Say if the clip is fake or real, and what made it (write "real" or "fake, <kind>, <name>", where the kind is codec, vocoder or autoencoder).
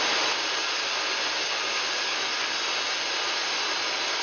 real